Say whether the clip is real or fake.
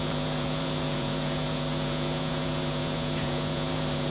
fake